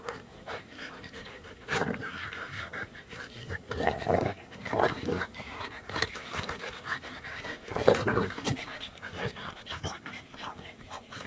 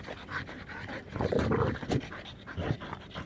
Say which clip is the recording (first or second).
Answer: second